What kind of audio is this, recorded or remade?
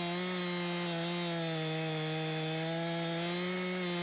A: recorded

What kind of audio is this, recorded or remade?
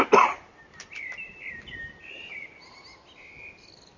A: recorded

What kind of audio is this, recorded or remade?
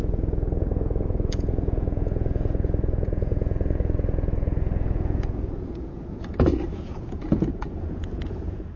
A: remade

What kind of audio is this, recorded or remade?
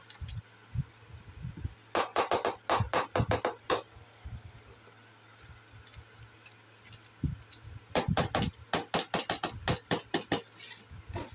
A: recorded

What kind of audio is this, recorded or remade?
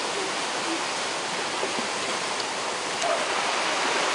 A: recorded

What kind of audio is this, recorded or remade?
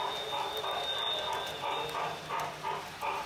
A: recorded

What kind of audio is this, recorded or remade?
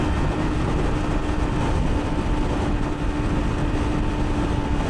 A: recorded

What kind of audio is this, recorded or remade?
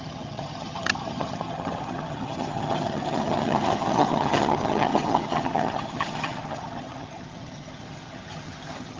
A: remade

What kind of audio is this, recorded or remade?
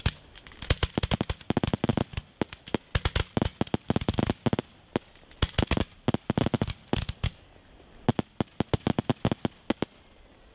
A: recorded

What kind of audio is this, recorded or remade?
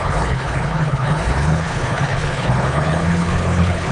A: remade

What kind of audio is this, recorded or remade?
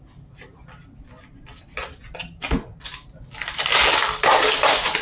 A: recorded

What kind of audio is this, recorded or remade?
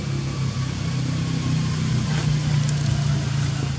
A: recorded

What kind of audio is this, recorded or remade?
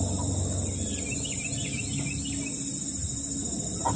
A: recorded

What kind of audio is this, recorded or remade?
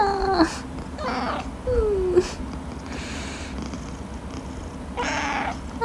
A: recorded